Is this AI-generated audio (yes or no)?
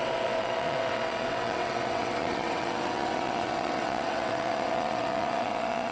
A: yes